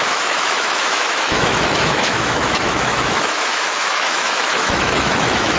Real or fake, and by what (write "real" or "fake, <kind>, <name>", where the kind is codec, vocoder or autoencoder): fake, autoencoder, DAC-VAE